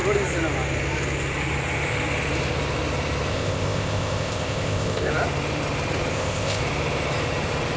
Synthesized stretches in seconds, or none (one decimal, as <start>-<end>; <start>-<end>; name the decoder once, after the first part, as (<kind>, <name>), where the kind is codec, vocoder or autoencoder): 3.3-5.1 (codec, ZipCodec); 6.1-6.6